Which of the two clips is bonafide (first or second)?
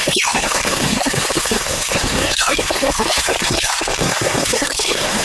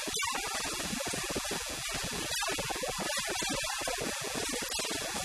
second